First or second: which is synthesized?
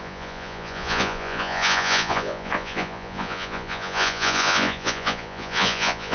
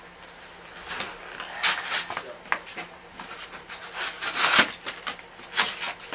first